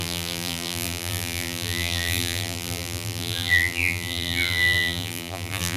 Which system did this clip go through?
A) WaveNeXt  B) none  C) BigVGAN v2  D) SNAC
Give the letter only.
C